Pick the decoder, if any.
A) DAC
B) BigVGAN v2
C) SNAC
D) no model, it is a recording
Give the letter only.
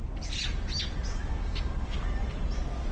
D